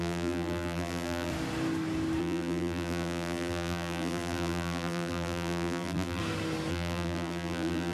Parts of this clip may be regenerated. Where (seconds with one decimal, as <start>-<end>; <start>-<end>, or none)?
0.0-1.3; 2.2-6.2; 6.7-7.9